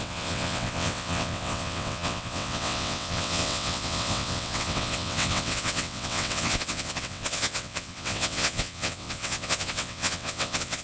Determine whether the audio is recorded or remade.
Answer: remade